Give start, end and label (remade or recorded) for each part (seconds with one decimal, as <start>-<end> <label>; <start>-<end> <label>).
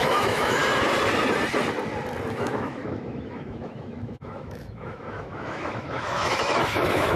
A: 0.0-0.6 remade; 0.6-2.3 recorded; 2.3-7.2 remade